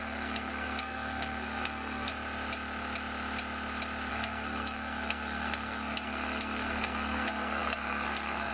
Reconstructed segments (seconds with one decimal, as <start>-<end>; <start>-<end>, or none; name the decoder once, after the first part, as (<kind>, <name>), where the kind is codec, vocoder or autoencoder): 0.0-2.1 (codec, SNAC); 4.1-8.5